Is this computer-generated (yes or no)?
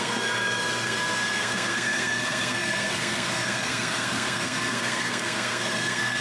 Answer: yes